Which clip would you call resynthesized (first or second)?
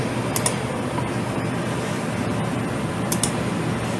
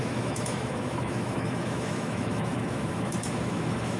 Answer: second